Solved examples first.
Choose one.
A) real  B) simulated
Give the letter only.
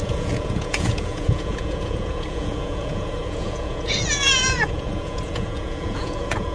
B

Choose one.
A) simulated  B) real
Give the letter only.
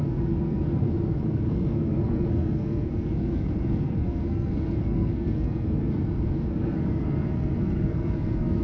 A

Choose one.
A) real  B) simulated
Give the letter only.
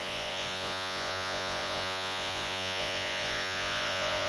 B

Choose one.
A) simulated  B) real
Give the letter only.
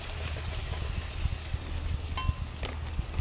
B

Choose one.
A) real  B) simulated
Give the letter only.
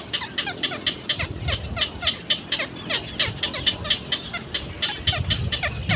A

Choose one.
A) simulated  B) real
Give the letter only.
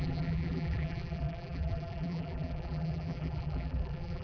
A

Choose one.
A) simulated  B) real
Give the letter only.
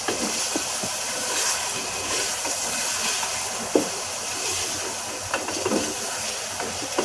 B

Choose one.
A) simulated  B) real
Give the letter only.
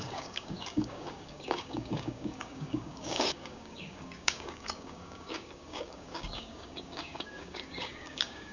A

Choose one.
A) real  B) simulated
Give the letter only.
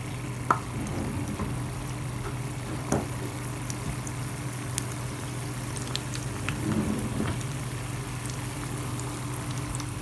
A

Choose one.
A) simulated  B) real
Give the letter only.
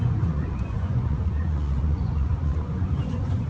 A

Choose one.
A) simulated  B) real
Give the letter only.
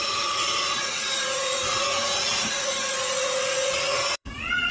A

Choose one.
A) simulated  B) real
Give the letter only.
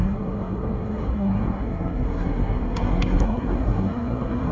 A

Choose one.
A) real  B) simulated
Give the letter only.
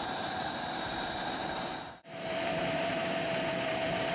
B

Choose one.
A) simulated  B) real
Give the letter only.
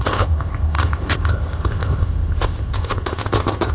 A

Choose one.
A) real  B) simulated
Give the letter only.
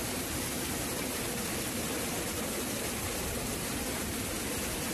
A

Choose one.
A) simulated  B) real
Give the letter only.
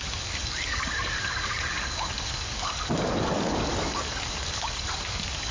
A